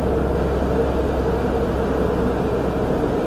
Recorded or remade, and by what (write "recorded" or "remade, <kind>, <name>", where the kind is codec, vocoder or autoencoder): recorded